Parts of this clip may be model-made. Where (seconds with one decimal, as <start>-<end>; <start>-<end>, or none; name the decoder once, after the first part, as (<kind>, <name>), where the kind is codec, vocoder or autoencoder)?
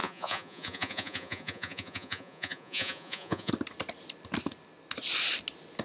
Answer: 0.0-3.5 (vocoder, Vocos)